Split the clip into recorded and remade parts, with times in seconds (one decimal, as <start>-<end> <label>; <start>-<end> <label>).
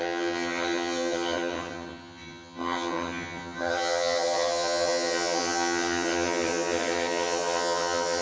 0.0-8.2 remade